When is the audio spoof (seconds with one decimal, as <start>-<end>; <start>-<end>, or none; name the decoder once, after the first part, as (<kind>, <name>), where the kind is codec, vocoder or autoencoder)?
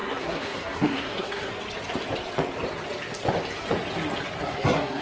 0.0-1.5 (codec, SNAC); 4.5-5.0